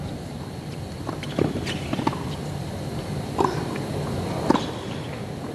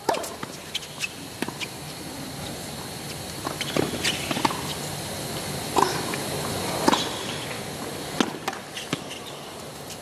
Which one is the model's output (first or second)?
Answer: first